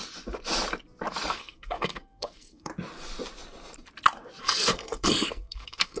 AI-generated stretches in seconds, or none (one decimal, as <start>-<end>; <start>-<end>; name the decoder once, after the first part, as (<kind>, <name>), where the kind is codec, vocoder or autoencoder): 1.3-2.7 (codec, SNAC); 4.4-6.0